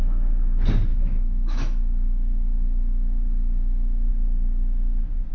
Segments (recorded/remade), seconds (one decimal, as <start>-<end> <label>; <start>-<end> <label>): 0.0-0.9 recorded; 0.9-4.1 remade; 4.1-5.3 recorded